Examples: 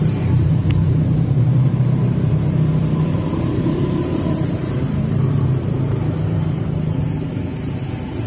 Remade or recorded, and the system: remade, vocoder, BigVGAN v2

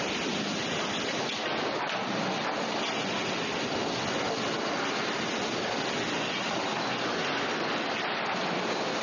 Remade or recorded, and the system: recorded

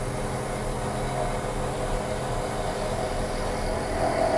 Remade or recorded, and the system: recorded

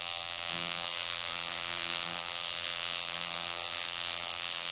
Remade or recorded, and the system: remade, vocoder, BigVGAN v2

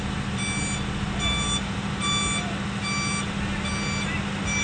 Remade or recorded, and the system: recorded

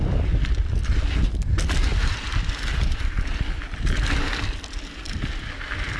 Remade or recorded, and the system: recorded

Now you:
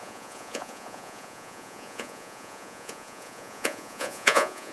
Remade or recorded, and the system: remade, vocoder, Vocos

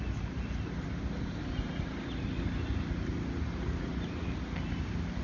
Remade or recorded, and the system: recorded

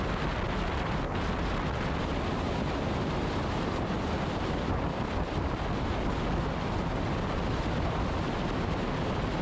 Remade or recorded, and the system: recorded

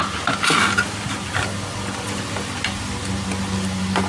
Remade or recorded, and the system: recorded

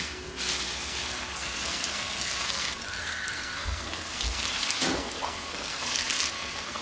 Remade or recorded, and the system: remade, codec, SNAC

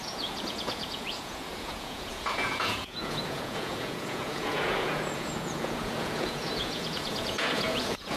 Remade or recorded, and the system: remade, vocoder, Vocos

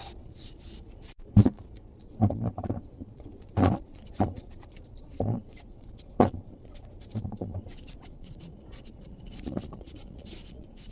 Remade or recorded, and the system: remade, vocoder, Vocos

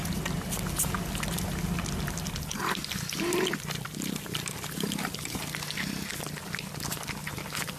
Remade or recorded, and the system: recorded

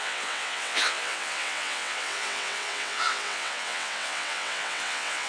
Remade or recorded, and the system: remade, vocoder, WaveNeXt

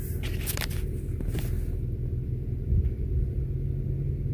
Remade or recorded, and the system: recorded